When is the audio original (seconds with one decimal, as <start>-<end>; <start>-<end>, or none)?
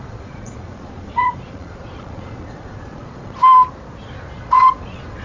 3.4-4.4